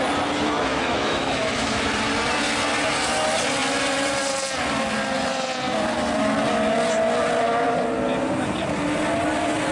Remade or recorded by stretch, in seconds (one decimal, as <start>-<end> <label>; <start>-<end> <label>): 0.0-0.7 recorded; 0.7-1.8 remade; 1.8-9.7 recorded